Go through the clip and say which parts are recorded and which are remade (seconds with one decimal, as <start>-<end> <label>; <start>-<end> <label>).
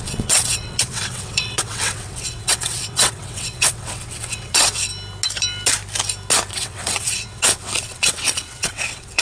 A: 0.0-4.9 remade; 4.9-6.5 recorded; 6.5-9.2 remade